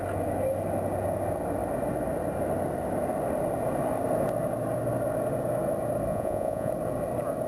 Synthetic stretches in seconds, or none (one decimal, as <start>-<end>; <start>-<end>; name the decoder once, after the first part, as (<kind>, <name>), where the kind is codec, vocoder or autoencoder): 6.1-6.7 (vocoder, Vocos)